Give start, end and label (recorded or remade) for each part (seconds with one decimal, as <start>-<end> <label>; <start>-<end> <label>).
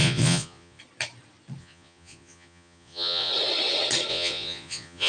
0.0-0.8 remade; 0.8-1.6 recorded; 1.6-3.3 remade; 3.3-4.1 recorded; 4.1-5.1 remade